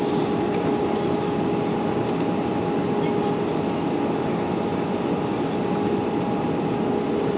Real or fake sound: real